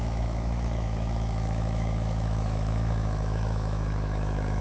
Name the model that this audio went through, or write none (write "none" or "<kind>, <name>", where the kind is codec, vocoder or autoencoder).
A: autoencoder, DAC-VAE